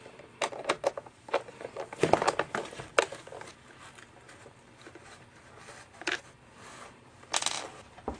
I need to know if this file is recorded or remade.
recorded